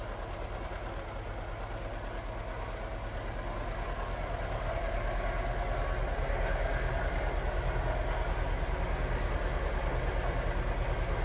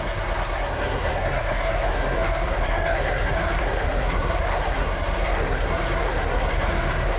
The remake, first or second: second